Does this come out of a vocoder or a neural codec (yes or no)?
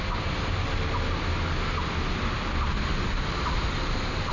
no